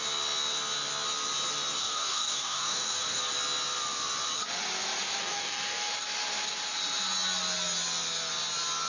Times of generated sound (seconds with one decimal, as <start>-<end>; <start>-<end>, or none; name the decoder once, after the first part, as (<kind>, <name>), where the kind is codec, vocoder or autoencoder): 1.8-3.2 (codec, DAC); 5.2-5.9